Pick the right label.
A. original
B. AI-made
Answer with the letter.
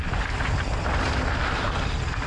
A